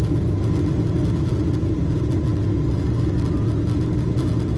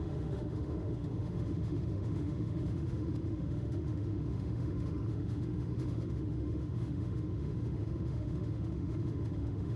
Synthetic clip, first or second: second